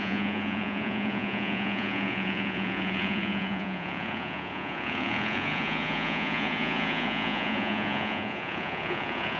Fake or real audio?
fake